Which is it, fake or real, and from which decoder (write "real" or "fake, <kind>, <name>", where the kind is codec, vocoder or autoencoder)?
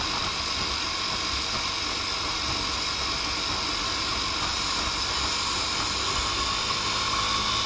real